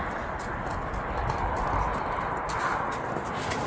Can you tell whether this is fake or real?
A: real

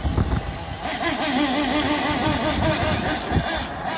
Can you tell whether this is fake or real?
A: real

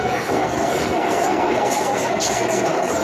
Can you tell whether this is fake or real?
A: fake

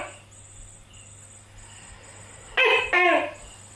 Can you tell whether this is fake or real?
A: real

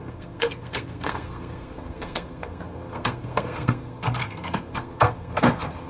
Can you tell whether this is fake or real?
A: fake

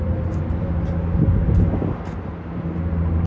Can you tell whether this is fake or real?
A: real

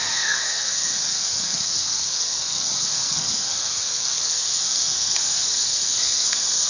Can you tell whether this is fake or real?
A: fake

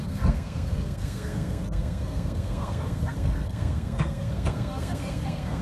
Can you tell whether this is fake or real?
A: fake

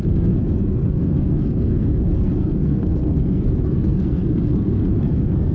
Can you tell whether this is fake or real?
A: fake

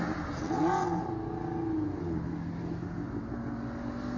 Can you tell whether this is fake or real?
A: real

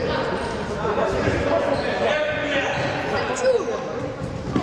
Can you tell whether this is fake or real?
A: real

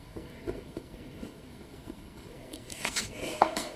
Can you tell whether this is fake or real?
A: fake